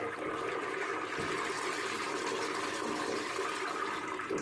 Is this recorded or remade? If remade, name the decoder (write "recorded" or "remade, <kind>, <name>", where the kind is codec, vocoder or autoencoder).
recorded